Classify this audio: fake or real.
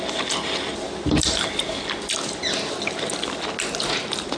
real